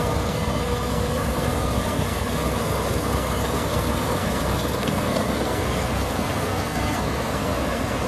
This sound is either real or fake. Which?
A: fake